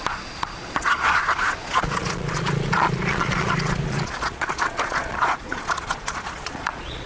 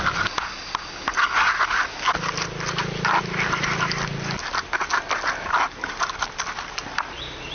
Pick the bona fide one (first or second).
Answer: second